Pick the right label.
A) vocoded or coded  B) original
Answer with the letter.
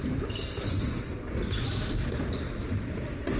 B